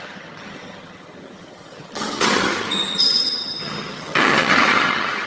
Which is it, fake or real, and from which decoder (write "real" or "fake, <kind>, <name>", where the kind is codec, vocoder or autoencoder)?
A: fake, vocoder, HiFi-GAN